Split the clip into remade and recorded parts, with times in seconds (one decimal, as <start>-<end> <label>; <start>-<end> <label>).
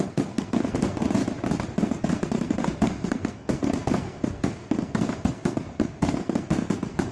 0.0-1.2 remade; 1.2-1.8 recorded; 1.8-7.1 remade